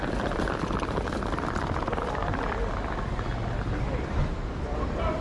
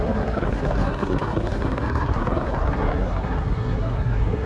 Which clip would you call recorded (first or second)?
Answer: first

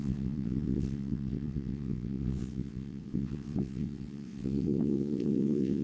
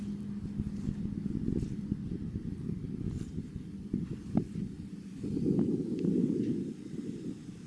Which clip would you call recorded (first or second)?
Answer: second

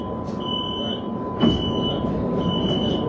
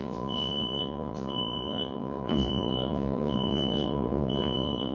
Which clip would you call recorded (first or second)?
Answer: first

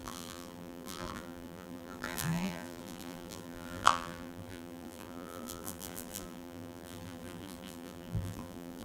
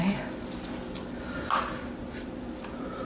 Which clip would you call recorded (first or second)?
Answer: second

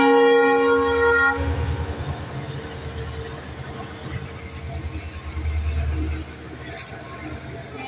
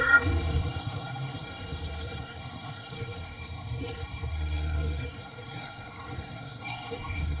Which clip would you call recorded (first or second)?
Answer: first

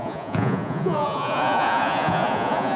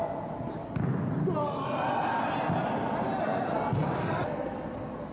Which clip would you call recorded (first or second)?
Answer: second